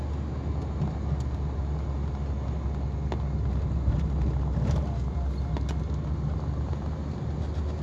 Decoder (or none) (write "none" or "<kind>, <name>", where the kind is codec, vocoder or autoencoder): none